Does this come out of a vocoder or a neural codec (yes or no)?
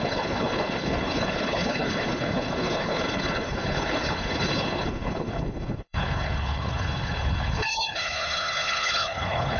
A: yes